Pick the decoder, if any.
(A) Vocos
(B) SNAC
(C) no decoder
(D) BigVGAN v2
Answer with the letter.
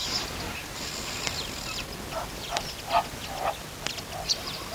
C